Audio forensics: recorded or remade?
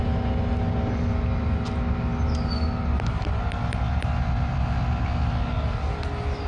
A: recorded